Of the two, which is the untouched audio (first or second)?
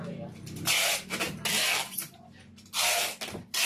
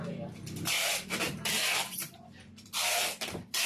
first